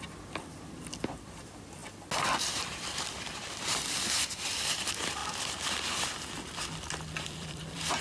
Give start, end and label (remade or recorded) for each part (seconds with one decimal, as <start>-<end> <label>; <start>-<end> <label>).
0.0-1.8 remade; 1.8-2.4 recorded; 2.4-5.2 remade; 5.2-7.2 recorded; 7.2-8.0 remade